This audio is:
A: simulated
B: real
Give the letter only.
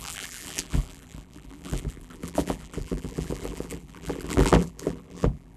A